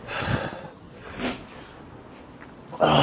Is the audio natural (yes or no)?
yes